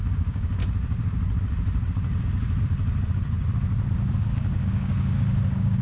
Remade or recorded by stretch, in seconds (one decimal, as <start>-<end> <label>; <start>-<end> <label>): 0.0-0.6 remade; 0.6-4.1 recorded; 4.1-5.8 remade

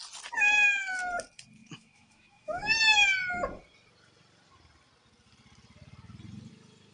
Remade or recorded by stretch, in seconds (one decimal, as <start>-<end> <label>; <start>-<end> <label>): 0.0-1.6 recorded; 1.6-2.8 remade; 2.8-6.9 recorded

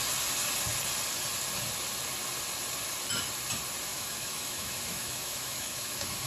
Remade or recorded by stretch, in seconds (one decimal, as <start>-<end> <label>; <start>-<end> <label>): 0.0-3.9 recorded; 3.9-6.3 remade